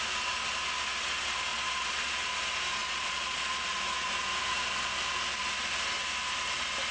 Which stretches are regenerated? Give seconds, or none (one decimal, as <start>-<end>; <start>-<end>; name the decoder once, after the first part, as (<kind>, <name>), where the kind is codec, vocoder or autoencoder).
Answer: 1.5-2.1 (vocoder, Vocos); 2.8-3.6